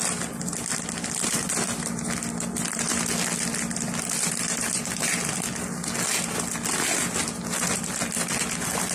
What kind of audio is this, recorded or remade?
recorded